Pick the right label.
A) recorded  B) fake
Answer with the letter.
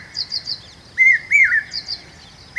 A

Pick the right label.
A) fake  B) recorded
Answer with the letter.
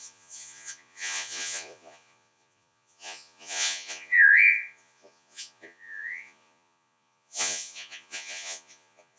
A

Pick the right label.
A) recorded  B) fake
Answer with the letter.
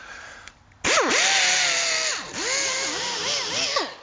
A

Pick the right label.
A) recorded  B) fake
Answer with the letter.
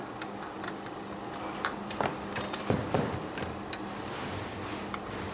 A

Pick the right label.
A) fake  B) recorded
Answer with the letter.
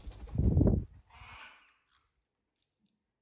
B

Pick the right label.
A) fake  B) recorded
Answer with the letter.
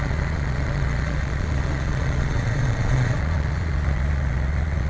A